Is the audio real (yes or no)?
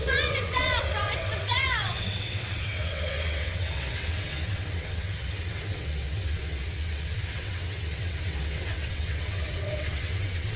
no